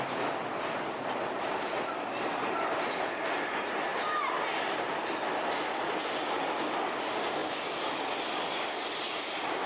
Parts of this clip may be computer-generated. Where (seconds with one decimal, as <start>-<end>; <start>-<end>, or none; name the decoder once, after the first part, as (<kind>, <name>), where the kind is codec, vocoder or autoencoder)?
none

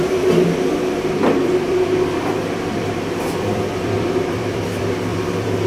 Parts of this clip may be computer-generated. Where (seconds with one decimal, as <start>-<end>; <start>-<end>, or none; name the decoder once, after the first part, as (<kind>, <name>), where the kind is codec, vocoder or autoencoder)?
0.0-5.7 (vocoder, BigVGAN v2)

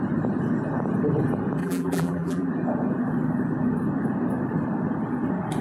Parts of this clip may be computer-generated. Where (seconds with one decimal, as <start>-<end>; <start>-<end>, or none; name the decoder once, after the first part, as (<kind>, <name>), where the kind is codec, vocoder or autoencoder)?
1.6-2.5 (vocoder, BigVGAN v2)

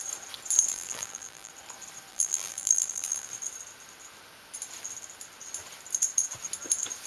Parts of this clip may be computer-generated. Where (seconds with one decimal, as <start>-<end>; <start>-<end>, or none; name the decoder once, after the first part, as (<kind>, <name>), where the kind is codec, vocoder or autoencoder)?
0.7-1.5 (vocoder, BigVGAN v2); 2.1-3.3

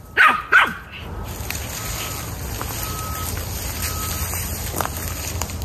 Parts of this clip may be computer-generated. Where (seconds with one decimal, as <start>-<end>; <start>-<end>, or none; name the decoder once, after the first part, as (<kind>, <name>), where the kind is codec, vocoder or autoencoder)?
none

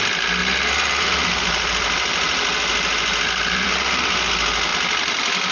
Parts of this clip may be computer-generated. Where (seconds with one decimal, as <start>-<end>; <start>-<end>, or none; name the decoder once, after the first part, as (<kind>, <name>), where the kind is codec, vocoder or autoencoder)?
0.4-3.7 (vocoder, BigVGAN v2); 4.7-5.5